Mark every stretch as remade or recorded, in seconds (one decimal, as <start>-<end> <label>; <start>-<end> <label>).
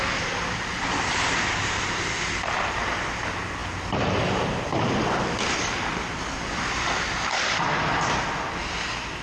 0.0-0.7 recorded; 0.7-1.8 remade; 1.8-9.2 recorded